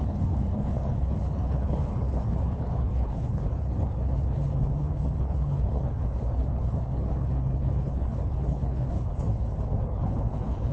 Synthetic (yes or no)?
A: yes